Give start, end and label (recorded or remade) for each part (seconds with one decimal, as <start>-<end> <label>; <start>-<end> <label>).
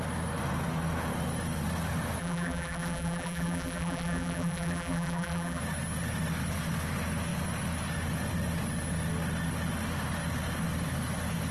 0.0-2.2 recorded; 2.2-5.6 remade; 5.6-11.5 recorded